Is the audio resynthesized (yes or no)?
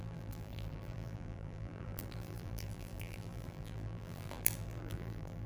yes